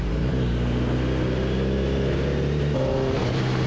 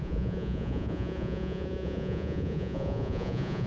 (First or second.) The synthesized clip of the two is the second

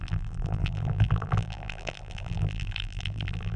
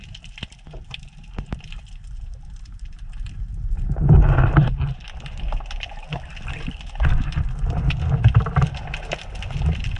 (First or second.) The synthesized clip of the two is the first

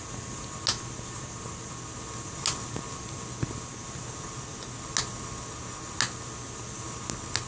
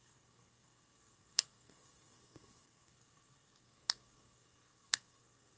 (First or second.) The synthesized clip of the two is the second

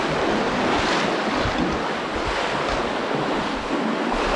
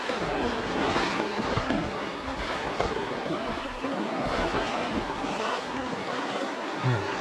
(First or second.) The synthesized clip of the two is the second